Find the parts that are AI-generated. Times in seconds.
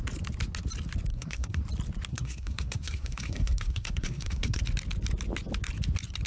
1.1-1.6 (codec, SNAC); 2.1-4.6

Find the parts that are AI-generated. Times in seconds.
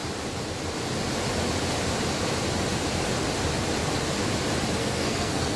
4.8-5.6 (codec, SNAC)